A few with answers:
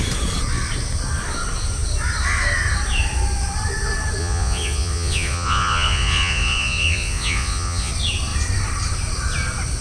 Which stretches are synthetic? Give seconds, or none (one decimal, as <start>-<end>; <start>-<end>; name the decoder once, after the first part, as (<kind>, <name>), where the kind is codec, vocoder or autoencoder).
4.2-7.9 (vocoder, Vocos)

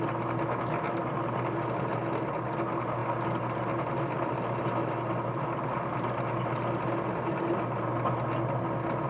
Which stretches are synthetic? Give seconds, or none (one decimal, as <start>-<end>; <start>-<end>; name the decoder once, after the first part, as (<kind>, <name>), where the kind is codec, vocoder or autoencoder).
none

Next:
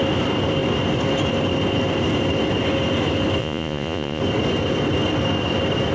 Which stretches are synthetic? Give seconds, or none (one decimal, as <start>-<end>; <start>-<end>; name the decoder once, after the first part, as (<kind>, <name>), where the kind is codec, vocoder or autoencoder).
3.4-4.2 (vocoder, Vocos)

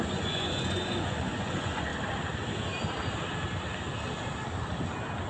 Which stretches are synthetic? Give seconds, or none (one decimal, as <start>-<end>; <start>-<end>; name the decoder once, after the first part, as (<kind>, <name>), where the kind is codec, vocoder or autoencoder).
0.0-1.9 (vocoder, Vocos)

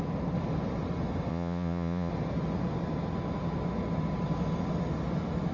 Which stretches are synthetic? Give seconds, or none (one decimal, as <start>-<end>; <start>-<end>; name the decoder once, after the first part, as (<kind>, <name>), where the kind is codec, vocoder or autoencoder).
1.3-2.1 (vocoder, Vocos)